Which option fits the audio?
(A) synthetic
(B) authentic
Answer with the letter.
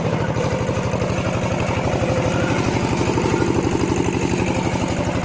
B